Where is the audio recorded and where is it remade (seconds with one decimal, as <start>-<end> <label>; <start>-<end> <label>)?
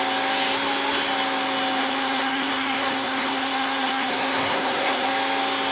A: 0.0-1.8 recorded; 1.8-5.1 remade; 5.1-5.7 recorded